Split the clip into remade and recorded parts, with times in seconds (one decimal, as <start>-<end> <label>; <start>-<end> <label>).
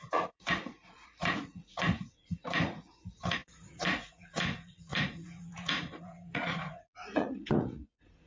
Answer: 0.0-8.3 remade